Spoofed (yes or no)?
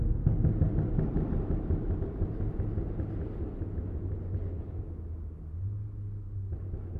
no